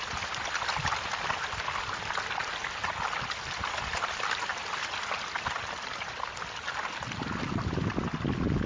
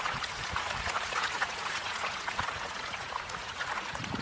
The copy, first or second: second